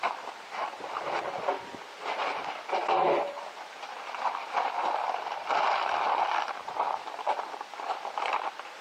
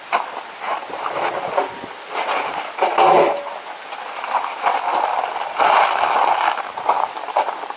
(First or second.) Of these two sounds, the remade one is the first